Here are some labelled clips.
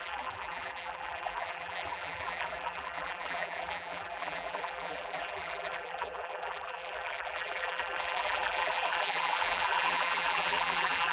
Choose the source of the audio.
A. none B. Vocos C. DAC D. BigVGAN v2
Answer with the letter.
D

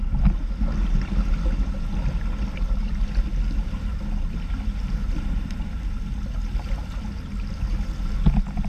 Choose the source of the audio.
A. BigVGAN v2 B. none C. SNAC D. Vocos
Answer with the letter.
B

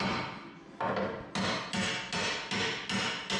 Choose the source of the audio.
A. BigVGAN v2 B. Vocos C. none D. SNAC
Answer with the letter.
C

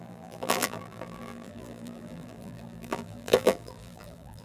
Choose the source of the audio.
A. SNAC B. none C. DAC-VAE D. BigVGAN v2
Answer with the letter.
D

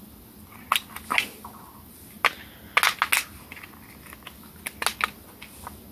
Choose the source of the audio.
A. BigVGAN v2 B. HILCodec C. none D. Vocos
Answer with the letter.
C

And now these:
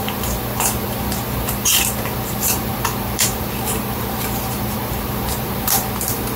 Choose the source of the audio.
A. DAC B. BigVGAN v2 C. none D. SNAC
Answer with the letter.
B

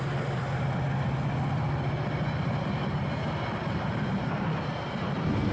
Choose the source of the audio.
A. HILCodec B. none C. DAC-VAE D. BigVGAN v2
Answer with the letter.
B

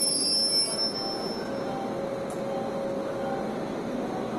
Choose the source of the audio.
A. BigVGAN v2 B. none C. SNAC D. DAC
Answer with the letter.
B